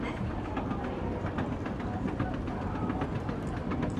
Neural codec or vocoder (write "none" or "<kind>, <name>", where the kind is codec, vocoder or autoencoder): none